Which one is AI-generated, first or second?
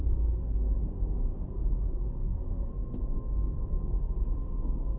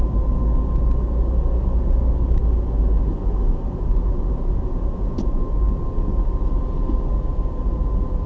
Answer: first